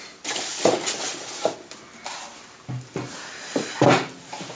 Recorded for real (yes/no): yes